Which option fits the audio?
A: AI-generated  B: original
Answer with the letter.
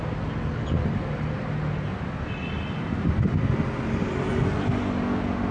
B